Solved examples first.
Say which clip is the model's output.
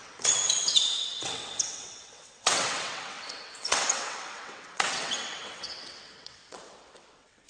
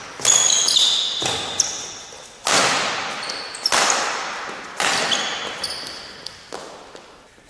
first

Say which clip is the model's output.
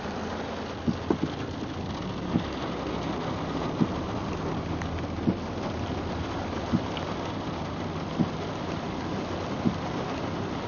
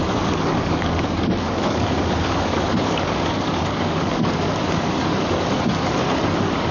second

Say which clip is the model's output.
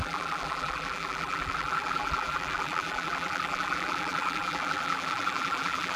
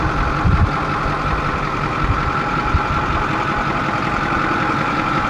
first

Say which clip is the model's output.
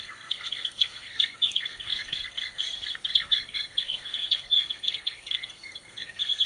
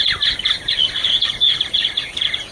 first